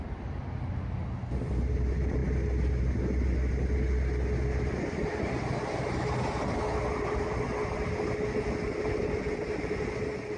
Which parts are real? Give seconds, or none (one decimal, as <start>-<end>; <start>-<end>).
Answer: 0.0-10.4